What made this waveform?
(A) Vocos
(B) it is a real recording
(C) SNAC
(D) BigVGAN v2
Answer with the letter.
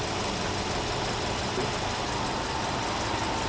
B